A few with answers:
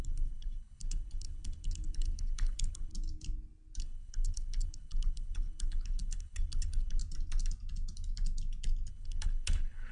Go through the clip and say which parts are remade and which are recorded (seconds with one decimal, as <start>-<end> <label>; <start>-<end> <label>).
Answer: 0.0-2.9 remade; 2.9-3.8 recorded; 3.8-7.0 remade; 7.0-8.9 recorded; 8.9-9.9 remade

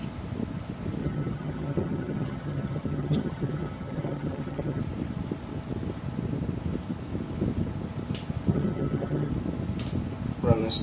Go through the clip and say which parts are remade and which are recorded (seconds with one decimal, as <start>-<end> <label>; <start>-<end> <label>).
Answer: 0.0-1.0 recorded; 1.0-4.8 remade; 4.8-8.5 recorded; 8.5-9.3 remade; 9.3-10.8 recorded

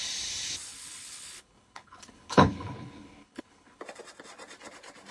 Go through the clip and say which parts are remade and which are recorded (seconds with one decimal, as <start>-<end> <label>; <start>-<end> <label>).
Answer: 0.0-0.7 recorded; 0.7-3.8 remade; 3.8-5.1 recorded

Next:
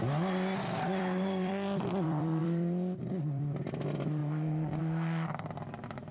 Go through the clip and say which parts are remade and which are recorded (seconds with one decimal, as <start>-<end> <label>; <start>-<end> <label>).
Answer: 0.0-4.2 remade; 4.2-4.8 recorded; 4.8-6.1 remade

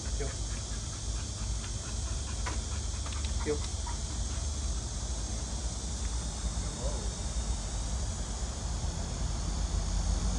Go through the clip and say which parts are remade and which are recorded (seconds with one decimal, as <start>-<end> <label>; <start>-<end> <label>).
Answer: 0.0-3.7 recorded; 3.7-4.2 remade; 4.2-10.4 recorded

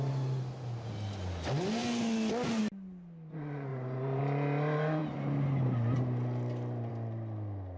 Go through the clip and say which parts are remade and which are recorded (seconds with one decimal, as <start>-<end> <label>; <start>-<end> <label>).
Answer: 0.0-3.7 recorded; 3.7-4.2 remade; 4.2-7.8 recorded

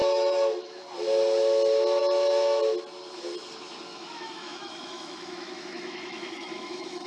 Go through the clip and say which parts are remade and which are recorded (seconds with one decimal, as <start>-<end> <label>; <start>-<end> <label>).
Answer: 0.0-0.8 remade; 0.8-2.0 recorded; 2.0-2.6 remade; 2.6-3.9 recorded; 3.9-7.1 remade

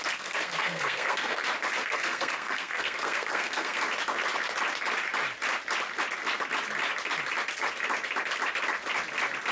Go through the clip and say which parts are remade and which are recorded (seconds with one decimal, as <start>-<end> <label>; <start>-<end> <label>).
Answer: 0.0-1.4 remade; 1.4-1.8 recorded; 1.8-3.8 remade; 3.8-9.5 recorded